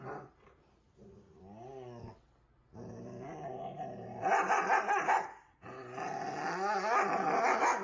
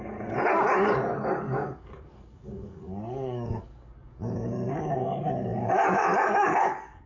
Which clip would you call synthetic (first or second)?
second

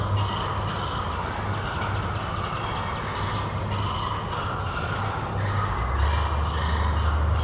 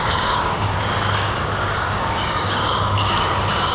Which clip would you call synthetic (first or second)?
second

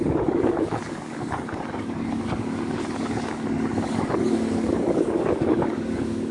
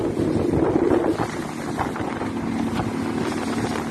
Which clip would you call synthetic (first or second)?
first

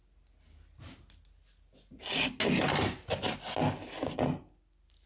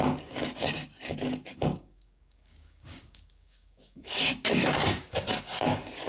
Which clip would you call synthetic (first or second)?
second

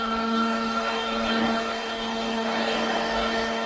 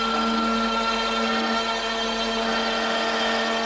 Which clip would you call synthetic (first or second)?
first